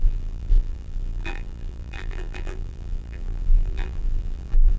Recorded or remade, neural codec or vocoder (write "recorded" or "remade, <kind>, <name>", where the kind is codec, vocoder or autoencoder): remade, vocoder, BigVGAN v2